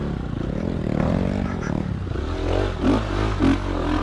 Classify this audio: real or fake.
real